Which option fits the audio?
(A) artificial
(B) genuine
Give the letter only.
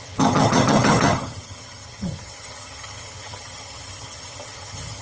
A